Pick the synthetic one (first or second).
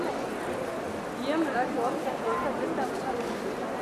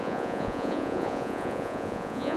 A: second